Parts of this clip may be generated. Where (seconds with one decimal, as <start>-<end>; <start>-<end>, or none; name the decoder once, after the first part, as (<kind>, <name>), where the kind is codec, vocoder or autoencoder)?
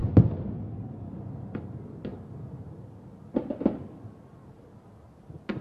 none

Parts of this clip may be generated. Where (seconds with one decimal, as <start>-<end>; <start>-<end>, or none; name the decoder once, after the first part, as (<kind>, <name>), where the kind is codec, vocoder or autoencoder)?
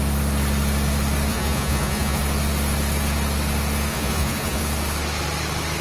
1.3-2.2 (vocoder, Vocos); 3.9-4.6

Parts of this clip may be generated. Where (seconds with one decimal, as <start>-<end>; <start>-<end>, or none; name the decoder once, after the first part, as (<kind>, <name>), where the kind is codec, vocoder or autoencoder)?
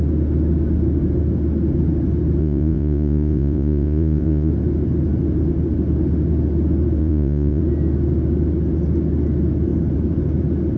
2.4-4.5 (vocoder, Vocos); 7.0-7.6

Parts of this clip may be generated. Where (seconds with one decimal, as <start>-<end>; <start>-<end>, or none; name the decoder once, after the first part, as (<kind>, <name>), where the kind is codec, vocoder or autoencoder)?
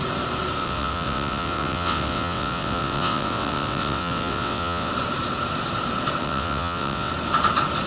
0.6-4.9 (vocoder, WaveNeXt); 6.2-7.1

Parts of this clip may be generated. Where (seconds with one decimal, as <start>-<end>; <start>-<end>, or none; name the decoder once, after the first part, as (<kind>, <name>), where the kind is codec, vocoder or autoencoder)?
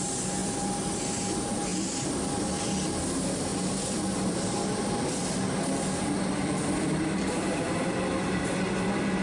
0.4-1.0 (vocoder, BigVGAN v2); 1.7-2.4; 3.5-8.3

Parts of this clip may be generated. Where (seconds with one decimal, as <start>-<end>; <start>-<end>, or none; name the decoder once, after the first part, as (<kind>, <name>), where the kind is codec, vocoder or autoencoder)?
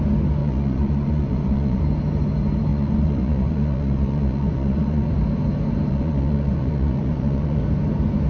0.4-1.8 (vocoder, Vocos); 2.7-5.1; 5.9-7.6